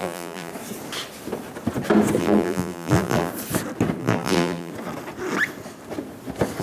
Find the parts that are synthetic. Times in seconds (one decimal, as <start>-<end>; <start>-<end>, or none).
0.0-0.5; 2.2-3.3; 4.0-4.7